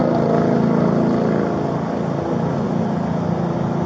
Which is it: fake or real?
real